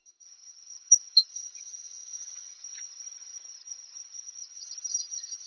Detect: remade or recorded remade